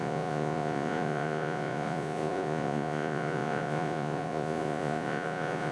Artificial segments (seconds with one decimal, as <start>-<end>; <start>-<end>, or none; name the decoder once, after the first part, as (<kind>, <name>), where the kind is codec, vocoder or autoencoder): 0.0-5.7 (vocoder, Vocos)